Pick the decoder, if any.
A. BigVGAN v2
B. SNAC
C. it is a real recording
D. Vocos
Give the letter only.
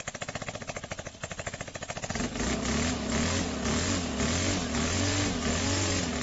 C